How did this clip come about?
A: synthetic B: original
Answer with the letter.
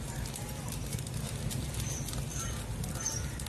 B